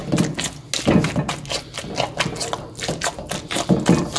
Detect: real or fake real